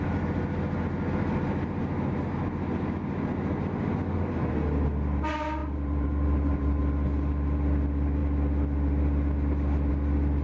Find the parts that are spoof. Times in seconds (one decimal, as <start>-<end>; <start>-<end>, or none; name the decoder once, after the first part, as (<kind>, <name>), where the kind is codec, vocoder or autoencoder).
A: 5.6-6.8 (vocoder, BigVGAN v2)